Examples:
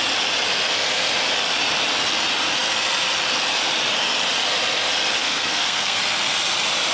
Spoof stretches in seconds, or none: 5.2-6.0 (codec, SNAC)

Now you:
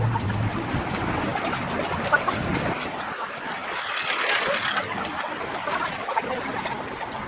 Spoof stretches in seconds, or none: none

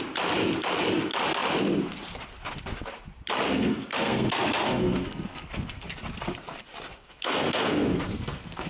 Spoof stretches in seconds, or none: 3.5-5.9 (codec, SNAC); 6.9-8.7

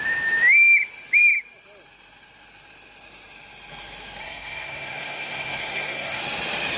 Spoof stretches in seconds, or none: 4.2-6.2 (codec, SNAC)

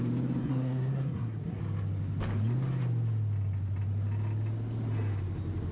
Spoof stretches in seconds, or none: 0.4-1.6 (codec, SNAC)

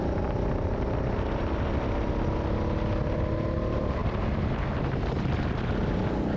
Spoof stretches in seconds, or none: none

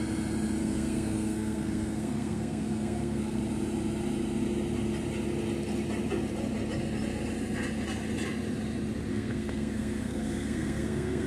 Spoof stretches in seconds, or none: 0.6-3.4 (codec, SNAC); 9.1-11.3

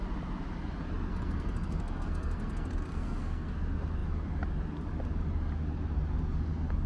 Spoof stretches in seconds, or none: 1.1-3.5 (codec, SNAC)